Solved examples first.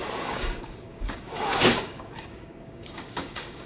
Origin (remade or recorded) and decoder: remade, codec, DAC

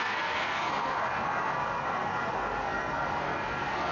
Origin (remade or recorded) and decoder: remade, codec, SNAC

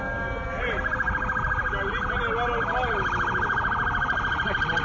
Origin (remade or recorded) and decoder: recorded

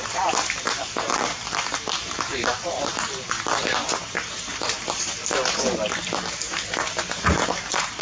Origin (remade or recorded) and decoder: remade, vocoder, BigVGAN v2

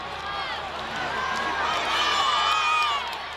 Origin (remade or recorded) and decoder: recorded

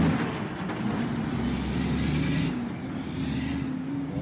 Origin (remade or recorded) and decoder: recorded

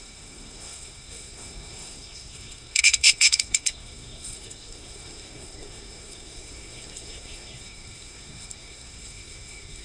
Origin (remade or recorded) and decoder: remade, codec, SNAC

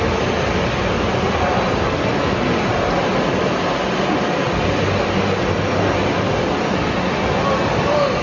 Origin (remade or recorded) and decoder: recorded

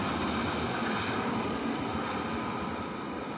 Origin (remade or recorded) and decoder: recorded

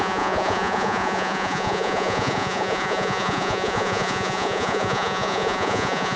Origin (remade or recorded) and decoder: remade, vocoder, Vocos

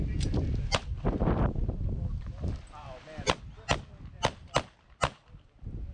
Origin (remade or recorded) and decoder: recorded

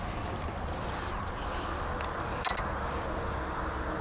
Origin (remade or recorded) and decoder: recorded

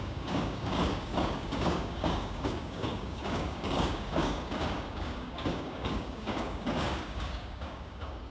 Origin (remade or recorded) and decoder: remade, codec, DAC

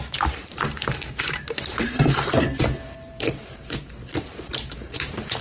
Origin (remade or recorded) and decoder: remade, vocoder, BigVGAN v2